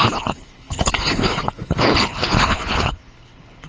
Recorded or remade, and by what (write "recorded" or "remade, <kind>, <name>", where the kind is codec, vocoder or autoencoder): remade, codec, HILCodec